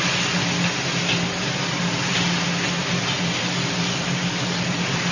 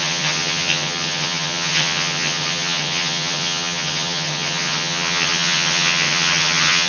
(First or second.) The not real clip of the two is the second